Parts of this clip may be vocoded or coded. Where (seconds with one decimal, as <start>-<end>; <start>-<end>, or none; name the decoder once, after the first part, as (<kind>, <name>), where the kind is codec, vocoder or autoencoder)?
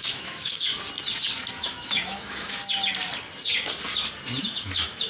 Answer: 0.0-0.7 (autoencoder, DAC-VAE); 1.6-2.6; 4.4-5.1